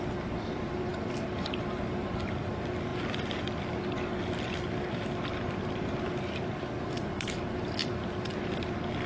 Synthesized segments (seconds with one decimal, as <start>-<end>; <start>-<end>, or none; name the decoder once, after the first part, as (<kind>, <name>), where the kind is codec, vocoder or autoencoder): none

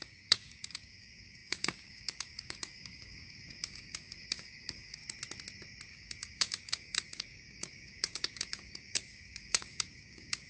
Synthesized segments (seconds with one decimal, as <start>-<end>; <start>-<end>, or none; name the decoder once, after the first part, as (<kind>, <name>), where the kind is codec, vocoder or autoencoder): 0.0-5.0 (codec, DAC); 5.9-10.5